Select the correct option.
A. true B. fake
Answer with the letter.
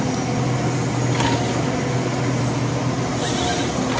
A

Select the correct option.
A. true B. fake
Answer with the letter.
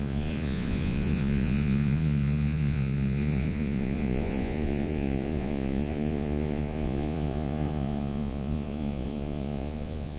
B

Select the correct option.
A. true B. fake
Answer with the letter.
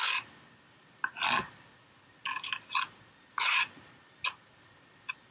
A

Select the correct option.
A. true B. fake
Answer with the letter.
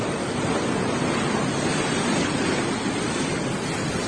A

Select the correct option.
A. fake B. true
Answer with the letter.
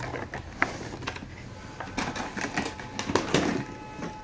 B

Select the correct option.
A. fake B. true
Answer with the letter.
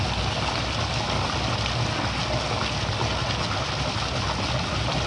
B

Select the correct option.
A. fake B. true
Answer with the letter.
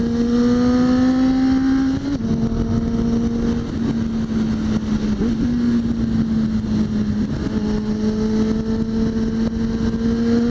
B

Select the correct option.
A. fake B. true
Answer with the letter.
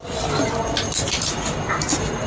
B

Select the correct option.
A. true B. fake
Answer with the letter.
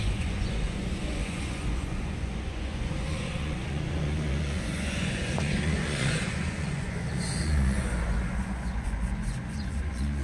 B